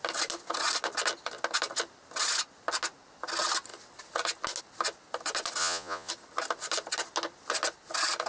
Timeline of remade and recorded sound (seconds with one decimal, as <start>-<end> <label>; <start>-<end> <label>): 0.0-5.6 recorded; 5.6-6.1 remade; 6.1-8.3 recorded